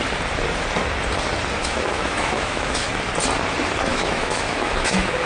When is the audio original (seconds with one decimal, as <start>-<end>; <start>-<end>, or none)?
0.0-1.6; 2.9-3.9